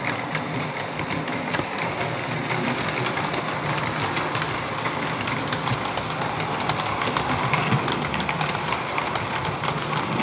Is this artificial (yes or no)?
no